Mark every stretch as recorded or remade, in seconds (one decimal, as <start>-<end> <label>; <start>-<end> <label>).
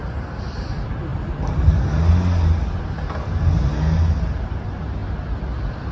0.0-5.9 recorded